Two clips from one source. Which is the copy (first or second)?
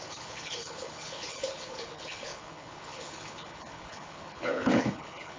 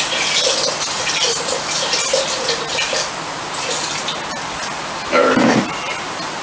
first